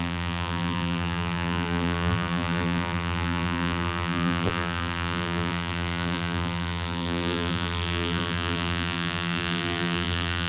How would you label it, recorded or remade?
remade